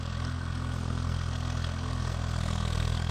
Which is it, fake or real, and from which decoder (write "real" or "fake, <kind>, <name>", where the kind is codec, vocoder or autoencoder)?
fake, codec, SNAC